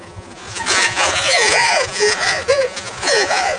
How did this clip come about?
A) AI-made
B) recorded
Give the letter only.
A